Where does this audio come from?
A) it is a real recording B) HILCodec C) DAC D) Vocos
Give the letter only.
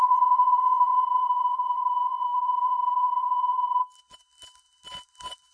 B